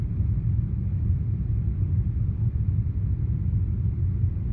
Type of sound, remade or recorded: recorded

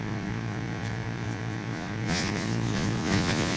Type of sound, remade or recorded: remade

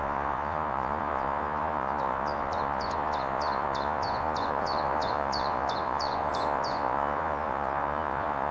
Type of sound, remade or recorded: remade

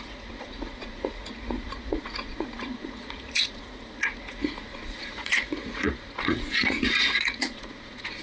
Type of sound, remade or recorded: remade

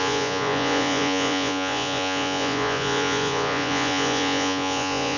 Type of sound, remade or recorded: remade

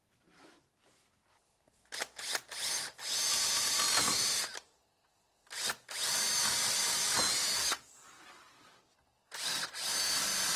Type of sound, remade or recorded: recorded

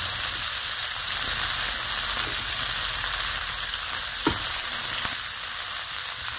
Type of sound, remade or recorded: recorded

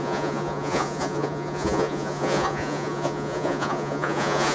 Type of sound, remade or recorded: remade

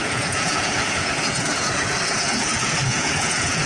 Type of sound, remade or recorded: remade